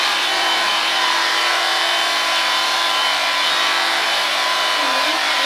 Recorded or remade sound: remade